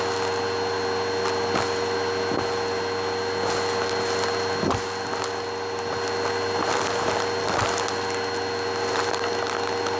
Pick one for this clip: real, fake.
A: real